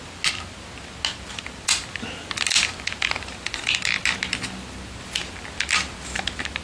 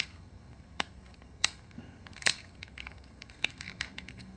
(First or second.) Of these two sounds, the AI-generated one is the second